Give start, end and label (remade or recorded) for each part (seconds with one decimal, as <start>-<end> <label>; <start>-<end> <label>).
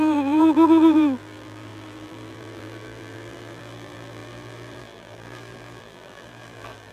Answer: 0.0-6.9 remade